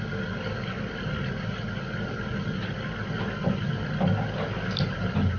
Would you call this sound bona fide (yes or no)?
yes